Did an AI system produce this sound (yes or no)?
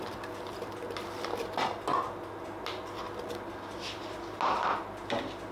no